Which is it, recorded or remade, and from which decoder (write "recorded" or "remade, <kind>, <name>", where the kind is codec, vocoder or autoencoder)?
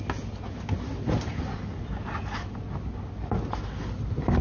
recorded